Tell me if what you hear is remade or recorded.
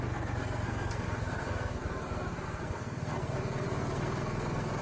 remade